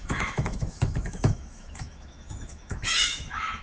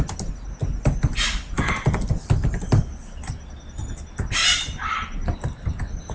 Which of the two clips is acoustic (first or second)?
second